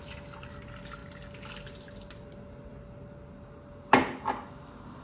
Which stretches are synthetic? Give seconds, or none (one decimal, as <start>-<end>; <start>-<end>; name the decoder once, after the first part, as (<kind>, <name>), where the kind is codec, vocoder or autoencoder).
none

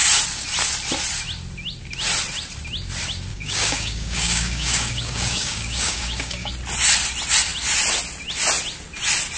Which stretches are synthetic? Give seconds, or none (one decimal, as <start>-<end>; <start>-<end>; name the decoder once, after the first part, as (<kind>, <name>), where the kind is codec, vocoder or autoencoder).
3.3-6.5 (codec, DAC)